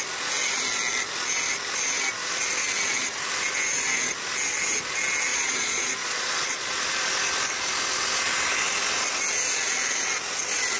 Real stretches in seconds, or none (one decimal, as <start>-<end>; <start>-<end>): 0.0-5.3; 6.7-10.8